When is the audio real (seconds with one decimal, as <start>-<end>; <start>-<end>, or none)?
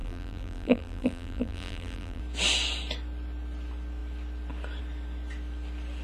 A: 2.2-6.0